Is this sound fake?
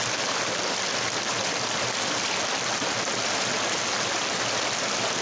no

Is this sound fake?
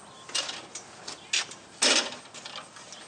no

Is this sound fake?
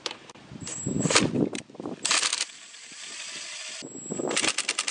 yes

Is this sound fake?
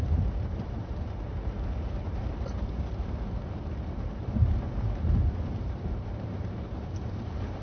yes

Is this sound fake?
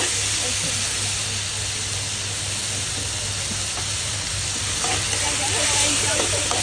no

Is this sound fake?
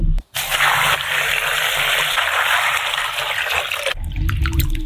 no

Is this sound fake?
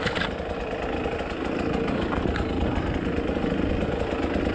no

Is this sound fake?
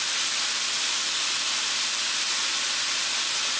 no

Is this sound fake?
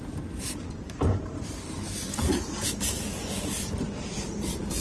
yes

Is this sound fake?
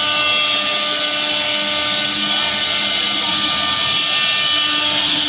no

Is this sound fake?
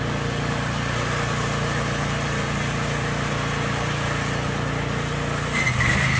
no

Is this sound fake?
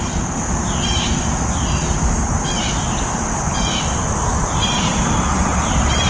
yes